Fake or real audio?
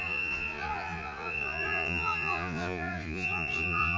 fake